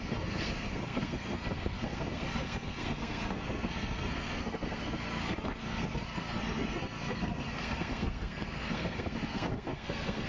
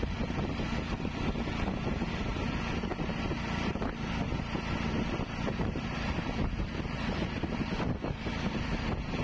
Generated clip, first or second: first